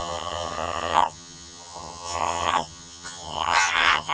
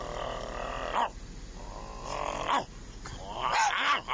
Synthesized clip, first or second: first